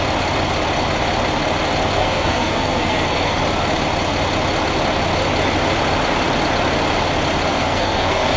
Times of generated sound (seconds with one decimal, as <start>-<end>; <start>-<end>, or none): 2.0-3.4; 7.5-8.4